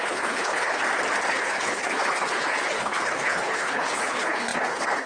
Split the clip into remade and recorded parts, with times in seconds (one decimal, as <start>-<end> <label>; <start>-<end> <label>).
0.0-0.8 remade; 0.8-1.3 recorded; 1.3-5.1 remade